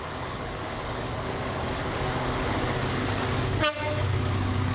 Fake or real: fake